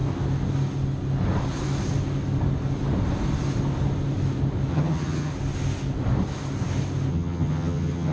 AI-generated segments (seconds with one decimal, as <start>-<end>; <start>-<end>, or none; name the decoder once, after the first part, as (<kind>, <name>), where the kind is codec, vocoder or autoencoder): 4.7-5.3 (vocoder, HiFi-GAN); 7.1-8.1